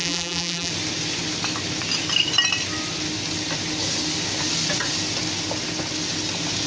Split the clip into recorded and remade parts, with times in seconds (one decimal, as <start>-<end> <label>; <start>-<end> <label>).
0.0-0.7 remade; 0.7-6.7 recorded